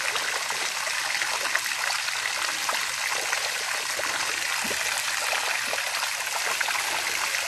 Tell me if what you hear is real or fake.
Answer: real